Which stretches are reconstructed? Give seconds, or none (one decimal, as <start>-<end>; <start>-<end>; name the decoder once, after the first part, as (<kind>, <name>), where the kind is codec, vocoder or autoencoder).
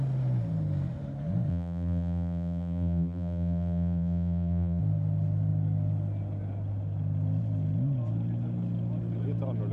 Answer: 1.5-4.8 (vocoder, BigVGAN v2)